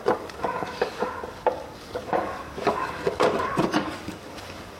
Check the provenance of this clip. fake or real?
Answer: fake